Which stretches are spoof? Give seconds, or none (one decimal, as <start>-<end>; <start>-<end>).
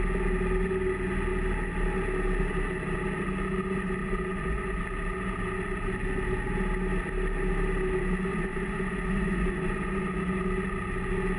4.0-4.8; 8.3-10.4